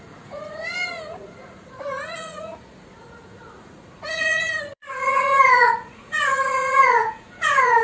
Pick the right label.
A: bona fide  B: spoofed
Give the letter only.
B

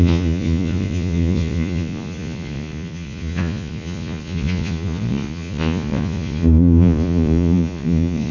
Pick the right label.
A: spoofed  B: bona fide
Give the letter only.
A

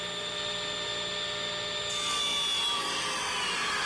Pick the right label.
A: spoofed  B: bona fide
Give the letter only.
B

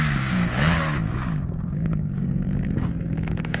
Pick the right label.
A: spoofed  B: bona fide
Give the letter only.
A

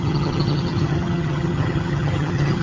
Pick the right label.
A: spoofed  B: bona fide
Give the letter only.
A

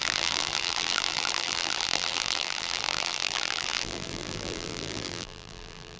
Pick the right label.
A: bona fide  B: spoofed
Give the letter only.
B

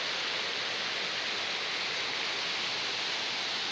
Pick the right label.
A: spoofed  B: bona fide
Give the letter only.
B